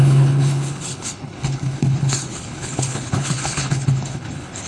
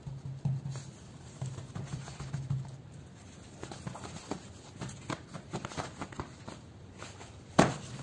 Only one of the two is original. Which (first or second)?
second